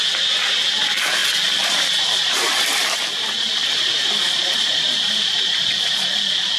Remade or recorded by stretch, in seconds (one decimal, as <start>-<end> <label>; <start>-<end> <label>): 0.0-6.6 recorded